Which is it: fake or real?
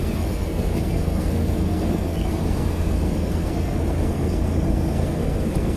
fake